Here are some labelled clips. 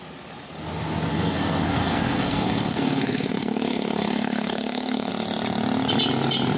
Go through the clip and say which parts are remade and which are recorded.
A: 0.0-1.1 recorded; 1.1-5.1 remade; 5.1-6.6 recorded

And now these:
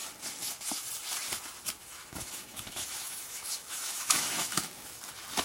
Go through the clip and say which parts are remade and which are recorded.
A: 0.0-1.8 recorded; 1.8-5.0 remade; 5.0-5.4 recorded

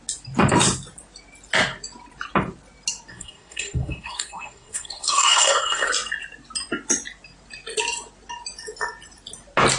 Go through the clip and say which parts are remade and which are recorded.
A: 0.0-3.1 recorded; 3.1-5.9 remade; 5.9-9.8 recorded

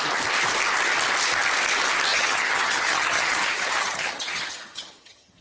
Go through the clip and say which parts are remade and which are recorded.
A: 0.0-2.1 recorded; 2.1-5.4 remade

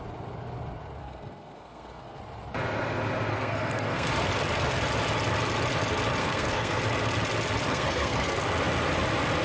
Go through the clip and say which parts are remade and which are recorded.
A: 0.0-1.0 recorded; 1.0-2.2 remade; 2.2-3.3 recorded; 3.3-4.1 remade; 4.1-6.2 recorded; 6.2-6.8 remade; 6.8-7.7 recorded; 7.7-8.4 remade; 8.4-9.4 recorded

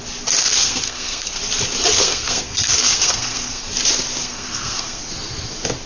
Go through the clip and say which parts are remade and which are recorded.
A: 0.0-0.4 recorded; 0.4-1.4 remade; 1.4-2.0 recorded; 2.0-3.7 remade; 3.7-4.2 recorded; 4.2-5.0 remade; 5.0-5.9 recorded